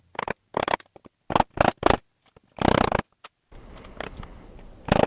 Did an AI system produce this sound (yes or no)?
no